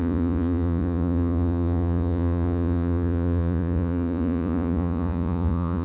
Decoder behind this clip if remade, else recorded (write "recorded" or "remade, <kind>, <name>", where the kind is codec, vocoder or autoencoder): remade, vocoder, Vocos